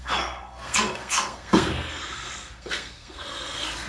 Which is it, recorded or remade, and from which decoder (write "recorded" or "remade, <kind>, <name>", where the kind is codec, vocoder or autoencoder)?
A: remade, codec, SNAC